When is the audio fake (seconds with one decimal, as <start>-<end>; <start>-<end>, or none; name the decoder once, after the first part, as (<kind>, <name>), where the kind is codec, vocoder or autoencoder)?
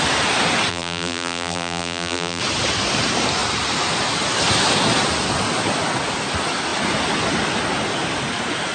0.7-2.4 (vocoder, BigVGAN v2)